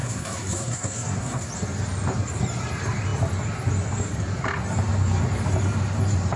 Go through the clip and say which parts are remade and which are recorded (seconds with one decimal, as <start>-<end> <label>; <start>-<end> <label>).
0.0-1.5 remade; 1.5-6.4 recorded